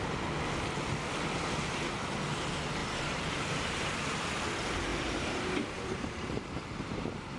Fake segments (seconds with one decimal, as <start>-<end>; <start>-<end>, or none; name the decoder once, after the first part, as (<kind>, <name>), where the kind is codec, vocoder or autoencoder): 2.8-4.2 (vocoder, BigVGAN v2); 4.9-7.4